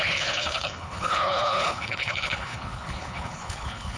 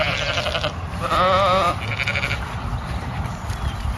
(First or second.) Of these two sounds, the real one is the second